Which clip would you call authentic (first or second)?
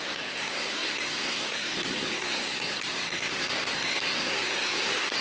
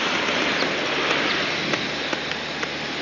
second